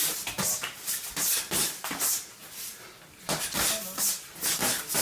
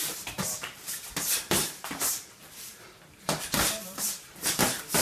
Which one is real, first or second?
first